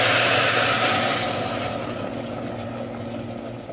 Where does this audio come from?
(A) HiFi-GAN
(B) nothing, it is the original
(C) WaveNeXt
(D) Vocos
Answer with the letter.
B